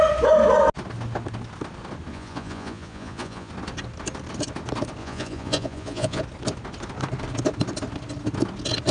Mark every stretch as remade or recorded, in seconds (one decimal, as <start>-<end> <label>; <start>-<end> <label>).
0.0-2.1 recorded; 2.1-3.5 remade; 3.5-5.0 recorded; 5.0-6.2 remade; 6.2-8.9 recorded